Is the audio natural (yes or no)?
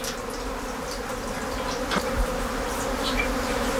yes